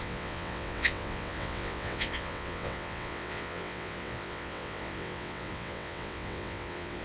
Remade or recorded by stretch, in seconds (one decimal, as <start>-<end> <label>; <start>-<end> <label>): 0.0-7.0 remade